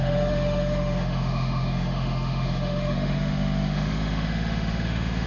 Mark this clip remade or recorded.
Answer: remade